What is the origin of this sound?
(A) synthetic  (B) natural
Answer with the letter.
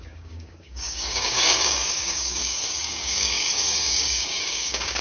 A